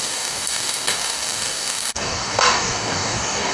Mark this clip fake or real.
fake